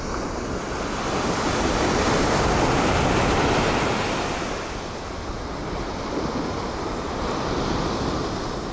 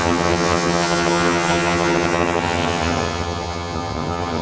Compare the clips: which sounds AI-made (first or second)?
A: second